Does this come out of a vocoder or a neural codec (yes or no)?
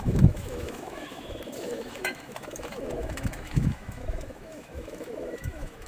yes